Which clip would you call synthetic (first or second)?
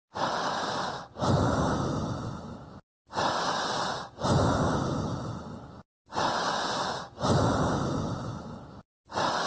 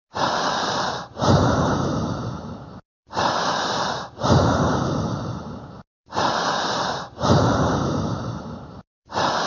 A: second